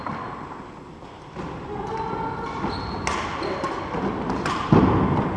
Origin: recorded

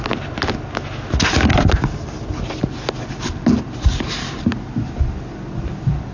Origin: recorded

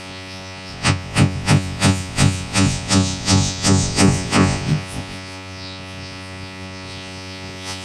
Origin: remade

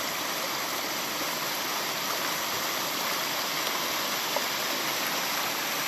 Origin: recorded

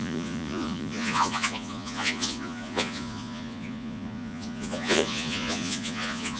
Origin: remade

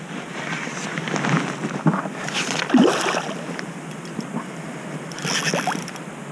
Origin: recorded